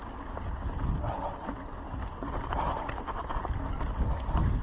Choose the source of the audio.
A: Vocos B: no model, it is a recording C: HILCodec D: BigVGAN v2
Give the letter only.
B